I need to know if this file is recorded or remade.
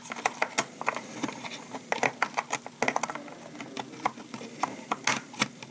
recorded